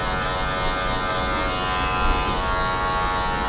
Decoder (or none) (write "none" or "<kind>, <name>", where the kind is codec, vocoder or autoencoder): none